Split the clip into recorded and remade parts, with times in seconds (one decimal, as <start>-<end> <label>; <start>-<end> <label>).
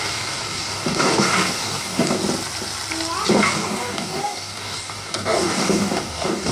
0.0-2.2 remade; 2.2-3.3 recorded; 3.3-6.5 remade